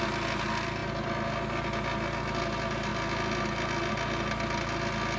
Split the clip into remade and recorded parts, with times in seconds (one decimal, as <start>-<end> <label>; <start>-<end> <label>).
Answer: 0.0-0.8 recorded; 0.8-1.3 remade; 1.3-5.2 recorded

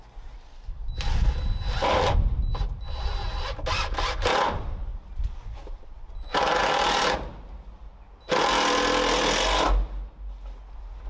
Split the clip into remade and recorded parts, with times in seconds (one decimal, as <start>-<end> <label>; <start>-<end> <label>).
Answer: 0.0-1.2 recorded; 1.2-2.6 remade; 2.6-4.9 recorded; 4.9-6.1 remade; 6.1-11.1 recorded

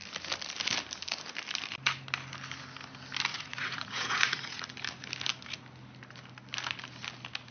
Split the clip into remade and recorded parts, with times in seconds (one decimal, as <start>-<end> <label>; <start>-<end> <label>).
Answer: 0.0-3.3 recorded; 3.3-4.7 remade; 4.7-7.5 recorded

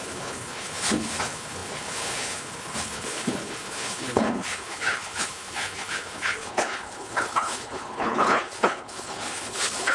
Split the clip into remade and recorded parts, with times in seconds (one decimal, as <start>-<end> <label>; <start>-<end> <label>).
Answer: 0.0-9.9 remade

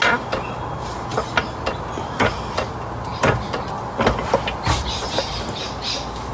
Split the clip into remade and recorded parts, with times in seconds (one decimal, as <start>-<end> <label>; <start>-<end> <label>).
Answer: 0.0-3.1 recorded; 3.1-5.6 remade; 5.6-6.3 recorded

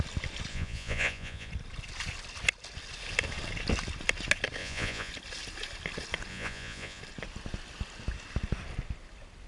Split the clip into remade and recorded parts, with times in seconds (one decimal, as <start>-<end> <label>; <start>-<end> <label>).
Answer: 0.0-0.5 recorded; 0.5-1.5 remade; 1.5-4.6 recorded; 4.6-5.1 remade; 5.1-6.3 recorded; 6.3-7.0 remade; 7.0-9.5 recorded

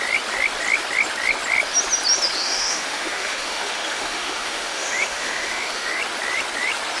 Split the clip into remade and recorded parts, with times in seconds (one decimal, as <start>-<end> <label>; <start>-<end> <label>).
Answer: 0.0-2.4 recorded; 2.4-6.0 remade; 6.0-7.0 recorded

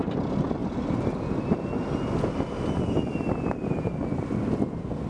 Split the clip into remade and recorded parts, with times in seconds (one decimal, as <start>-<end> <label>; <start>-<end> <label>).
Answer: 0.0-5.1 recorded